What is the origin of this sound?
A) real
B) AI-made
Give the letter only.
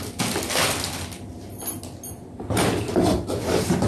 A